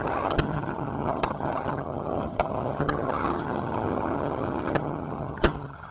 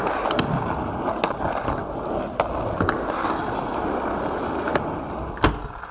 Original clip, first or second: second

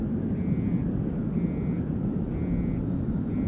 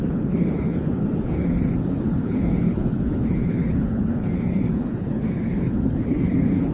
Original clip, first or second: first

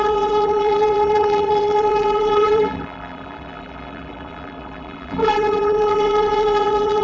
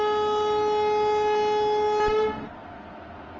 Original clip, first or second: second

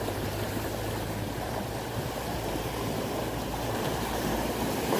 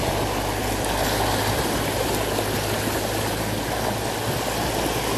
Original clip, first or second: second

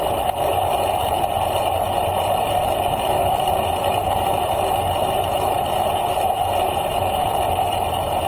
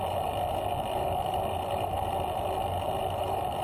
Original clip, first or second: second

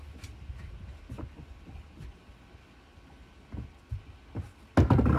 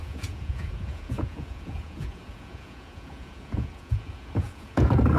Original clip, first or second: first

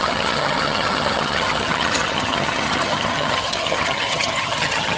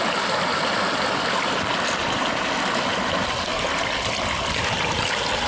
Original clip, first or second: second